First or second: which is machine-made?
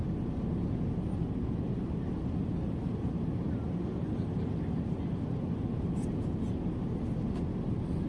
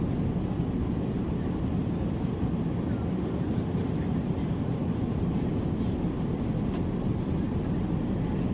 second